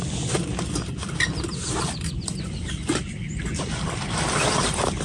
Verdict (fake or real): fake